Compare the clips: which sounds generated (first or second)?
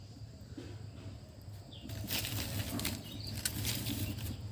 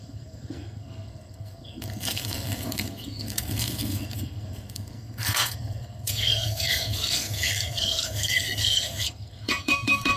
second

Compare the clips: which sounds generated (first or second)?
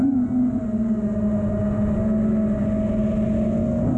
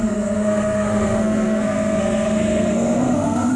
second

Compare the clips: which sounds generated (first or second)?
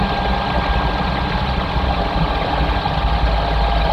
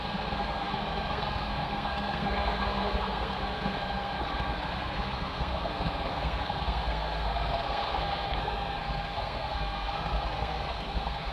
second